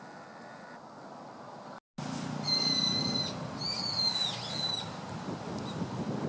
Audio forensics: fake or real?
real